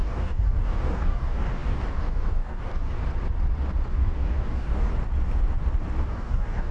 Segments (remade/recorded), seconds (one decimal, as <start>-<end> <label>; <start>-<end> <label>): 0.0-3.0 remade; 3.0-3.9 recorded; 3.9-4.9 remade; 4.9-6.0 recorded; 6.0-6.7 remade